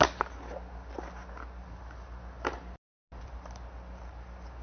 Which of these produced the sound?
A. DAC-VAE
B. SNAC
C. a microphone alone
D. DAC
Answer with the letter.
C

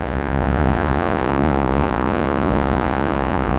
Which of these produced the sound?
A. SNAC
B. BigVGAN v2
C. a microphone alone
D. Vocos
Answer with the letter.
D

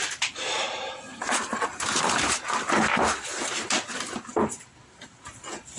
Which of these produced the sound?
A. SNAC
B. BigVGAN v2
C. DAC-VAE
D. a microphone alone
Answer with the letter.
B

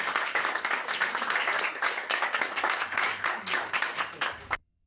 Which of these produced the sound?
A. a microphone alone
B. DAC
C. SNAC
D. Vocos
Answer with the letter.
B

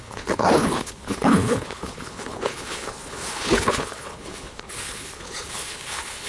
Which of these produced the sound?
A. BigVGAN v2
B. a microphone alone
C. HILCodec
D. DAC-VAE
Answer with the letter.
C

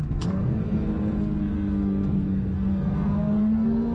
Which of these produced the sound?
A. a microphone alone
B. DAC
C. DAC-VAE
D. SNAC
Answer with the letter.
D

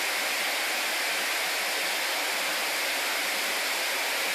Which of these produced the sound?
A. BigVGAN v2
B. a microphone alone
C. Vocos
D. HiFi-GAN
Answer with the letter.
B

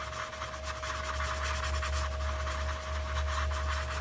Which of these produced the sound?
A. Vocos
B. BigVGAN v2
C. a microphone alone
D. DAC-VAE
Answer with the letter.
C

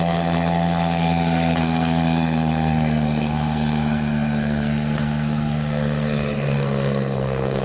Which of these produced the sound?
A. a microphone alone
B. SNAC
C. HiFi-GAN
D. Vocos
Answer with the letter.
B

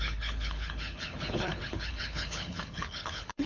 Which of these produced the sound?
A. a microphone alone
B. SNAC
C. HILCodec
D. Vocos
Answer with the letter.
C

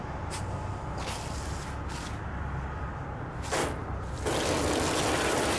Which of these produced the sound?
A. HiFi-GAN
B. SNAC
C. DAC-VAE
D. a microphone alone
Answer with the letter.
D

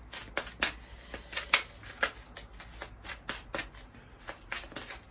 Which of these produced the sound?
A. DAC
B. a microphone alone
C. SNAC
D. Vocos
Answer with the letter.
B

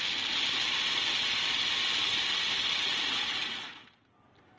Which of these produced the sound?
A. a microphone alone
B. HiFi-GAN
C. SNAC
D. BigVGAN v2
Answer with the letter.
D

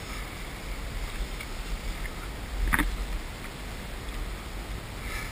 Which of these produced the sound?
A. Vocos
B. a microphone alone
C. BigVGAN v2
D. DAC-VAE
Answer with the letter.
B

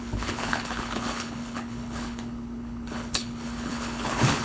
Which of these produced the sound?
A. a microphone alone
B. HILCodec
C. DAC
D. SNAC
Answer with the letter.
B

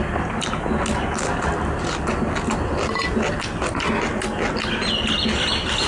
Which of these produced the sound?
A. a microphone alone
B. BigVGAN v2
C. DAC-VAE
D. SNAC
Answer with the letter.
A